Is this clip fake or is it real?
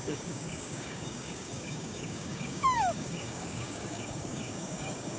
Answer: fake